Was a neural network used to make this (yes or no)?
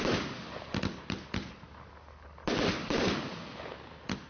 no